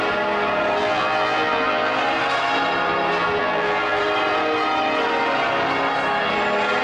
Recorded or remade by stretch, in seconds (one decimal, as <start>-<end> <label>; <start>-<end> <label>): 0.0-0.8 recorded; 0.8-2.0 remade; 2.0-3.4 recorded; 3.4-4.0 remade; 4.0-6.8 recorded